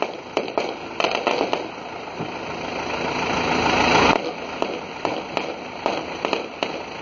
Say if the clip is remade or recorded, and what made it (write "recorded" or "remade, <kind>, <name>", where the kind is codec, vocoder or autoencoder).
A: recorded